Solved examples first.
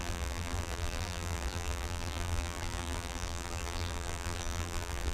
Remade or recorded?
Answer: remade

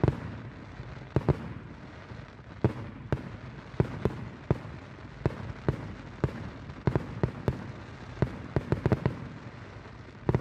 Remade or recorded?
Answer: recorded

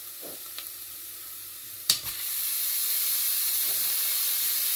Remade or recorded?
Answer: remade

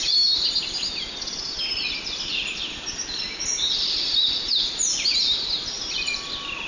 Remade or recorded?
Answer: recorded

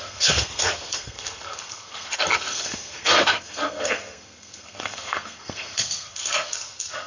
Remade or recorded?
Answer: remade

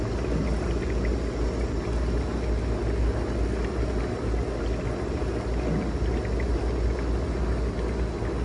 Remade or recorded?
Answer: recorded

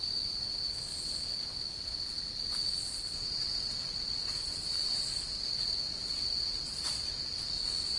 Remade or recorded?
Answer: recorded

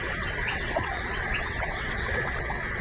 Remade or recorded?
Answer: remade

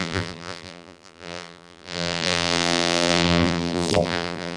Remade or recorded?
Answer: remade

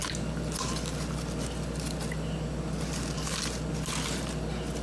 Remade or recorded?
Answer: recorded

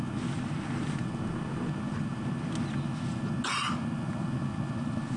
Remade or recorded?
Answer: recorded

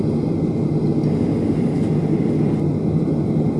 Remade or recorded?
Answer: recorded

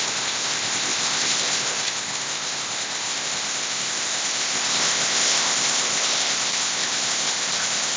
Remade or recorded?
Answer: remade